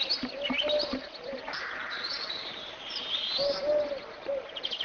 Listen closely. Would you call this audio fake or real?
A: real